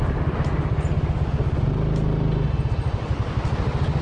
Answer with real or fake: real